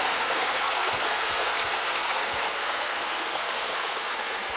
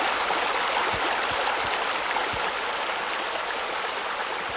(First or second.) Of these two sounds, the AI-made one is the first